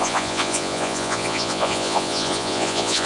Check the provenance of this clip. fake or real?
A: fake